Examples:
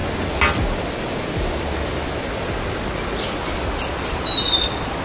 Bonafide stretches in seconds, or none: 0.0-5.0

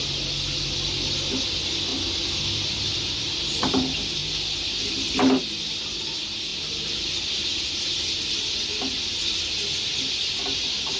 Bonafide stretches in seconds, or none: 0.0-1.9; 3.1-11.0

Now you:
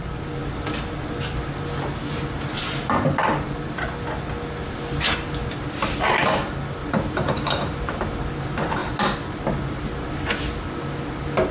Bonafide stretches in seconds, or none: 0.0-6.8; 8.2-11.5